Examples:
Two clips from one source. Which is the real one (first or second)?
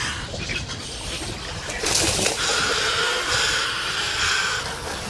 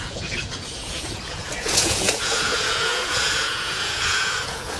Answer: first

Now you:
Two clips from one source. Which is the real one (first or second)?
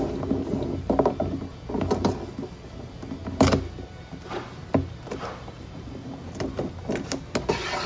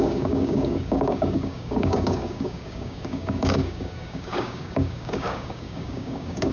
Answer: first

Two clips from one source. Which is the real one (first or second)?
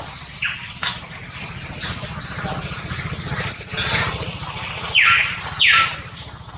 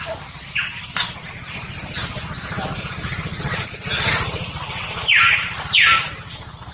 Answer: first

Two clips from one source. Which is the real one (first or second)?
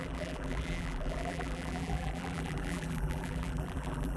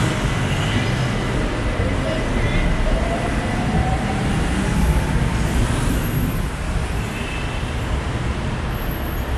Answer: second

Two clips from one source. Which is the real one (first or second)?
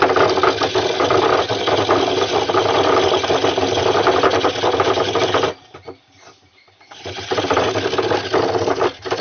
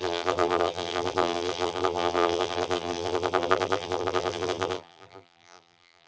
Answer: first